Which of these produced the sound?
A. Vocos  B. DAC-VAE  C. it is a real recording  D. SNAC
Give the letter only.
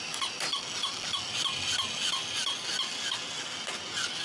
C